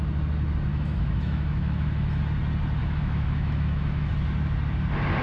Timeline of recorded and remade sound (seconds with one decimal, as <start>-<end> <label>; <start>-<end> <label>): 0.0-0.7 recorded; 0.7-2.2 remade; 2.2-2.8 recorded; 2.8-4.1 remade; 4.1-5.2 recorded